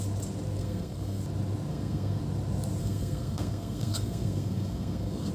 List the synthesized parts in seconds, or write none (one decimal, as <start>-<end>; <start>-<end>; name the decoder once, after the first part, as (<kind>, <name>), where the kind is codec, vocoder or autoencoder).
0.6-1.2 (codec, SNAC); 1.7-2.2; 2.8-5.3